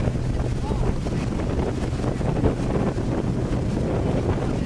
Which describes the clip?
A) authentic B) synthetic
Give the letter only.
A